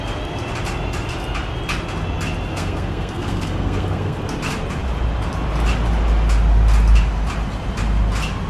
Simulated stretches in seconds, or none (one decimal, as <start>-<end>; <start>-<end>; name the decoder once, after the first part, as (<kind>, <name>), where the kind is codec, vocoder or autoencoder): 2.5-4.2 (codec, SNAC)